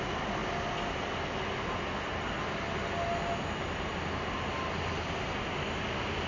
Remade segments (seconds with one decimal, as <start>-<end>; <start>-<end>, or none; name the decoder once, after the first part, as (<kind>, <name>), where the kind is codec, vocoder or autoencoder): none